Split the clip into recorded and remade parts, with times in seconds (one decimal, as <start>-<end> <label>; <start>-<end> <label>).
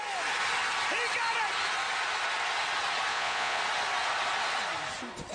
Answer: 0.0-3.1 recorded; 3.1-3.6 remade; 3.6-5.3 recorded